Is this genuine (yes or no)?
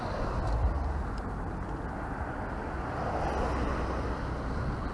yes